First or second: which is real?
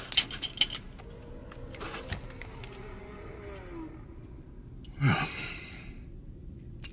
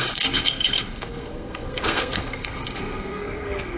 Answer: first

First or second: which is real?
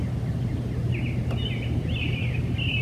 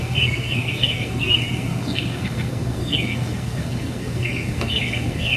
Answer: first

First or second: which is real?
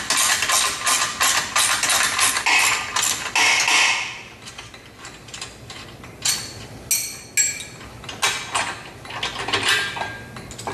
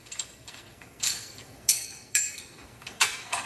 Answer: first